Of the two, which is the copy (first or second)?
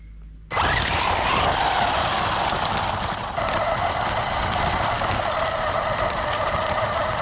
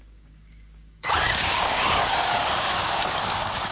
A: second